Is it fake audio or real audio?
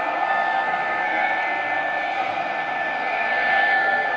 fake